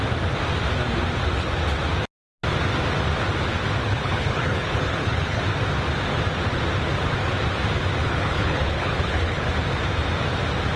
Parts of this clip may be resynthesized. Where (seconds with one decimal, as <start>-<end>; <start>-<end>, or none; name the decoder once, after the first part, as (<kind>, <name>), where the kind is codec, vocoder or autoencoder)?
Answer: 3.8-5.4 (codec, HILCodec); 8.0-9.5